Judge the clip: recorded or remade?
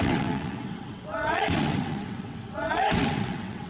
remade